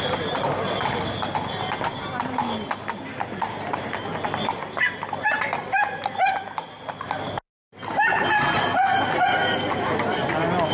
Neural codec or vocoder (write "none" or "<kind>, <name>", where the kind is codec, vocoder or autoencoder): none